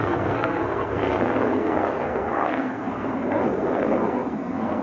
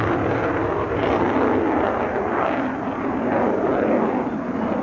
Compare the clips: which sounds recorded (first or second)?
second